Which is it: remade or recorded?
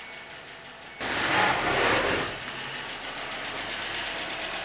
recorded